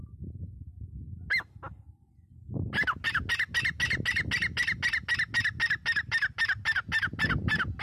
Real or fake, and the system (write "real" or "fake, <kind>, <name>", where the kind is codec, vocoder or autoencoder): real